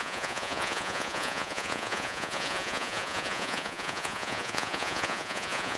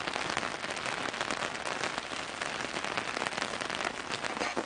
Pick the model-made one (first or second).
first